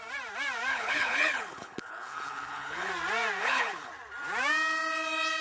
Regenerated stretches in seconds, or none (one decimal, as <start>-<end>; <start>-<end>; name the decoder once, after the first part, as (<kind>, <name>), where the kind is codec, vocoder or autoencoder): 0.7-2.9 (codec, HILCodec); 3.4-3.9